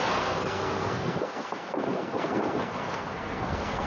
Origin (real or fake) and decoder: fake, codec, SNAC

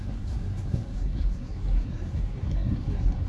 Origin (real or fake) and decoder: fake, codec, SNAC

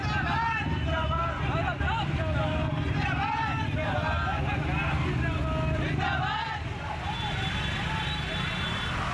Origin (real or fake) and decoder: real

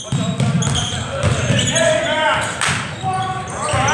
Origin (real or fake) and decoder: real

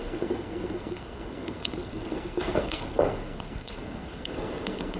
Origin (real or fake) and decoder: fake, codec, SNAC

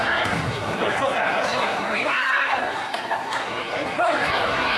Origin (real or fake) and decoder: fake, codec, SNAC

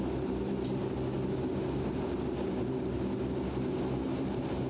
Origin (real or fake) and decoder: real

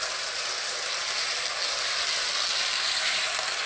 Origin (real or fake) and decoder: real